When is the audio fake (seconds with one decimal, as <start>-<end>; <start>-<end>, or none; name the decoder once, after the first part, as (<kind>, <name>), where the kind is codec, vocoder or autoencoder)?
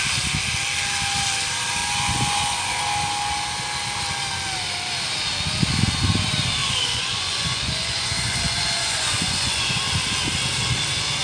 1.8-2.8 (vocoder, Vocos); 6.6-9.8